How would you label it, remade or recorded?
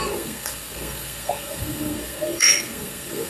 remade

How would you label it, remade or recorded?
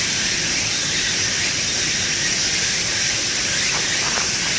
recorded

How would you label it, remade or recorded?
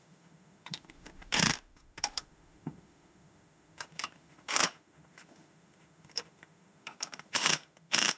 remade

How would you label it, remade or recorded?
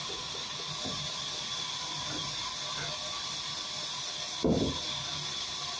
recorded